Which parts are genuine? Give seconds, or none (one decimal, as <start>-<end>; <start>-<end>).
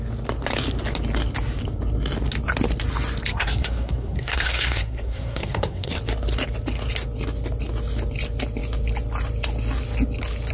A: 0.0-3.3; 6.0-10.5